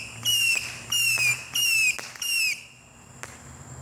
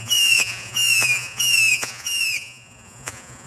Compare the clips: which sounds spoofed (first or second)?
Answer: second